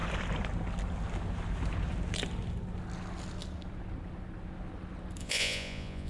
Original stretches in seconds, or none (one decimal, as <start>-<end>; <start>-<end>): 0.0-5.2